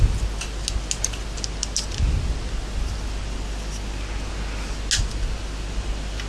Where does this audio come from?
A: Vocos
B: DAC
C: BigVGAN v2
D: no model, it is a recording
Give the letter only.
D